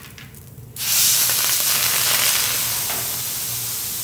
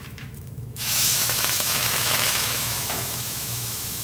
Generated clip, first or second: second